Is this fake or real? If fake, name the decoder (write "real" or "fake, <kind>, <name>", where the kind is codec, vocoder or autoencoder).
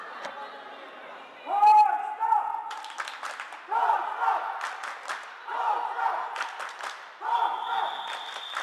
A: real